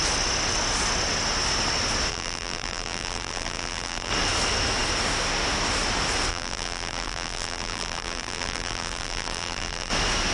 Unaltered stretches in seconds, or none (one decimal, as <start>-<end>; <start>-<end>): 0.0-2.1; 4.1-6.3; 9.9-10.3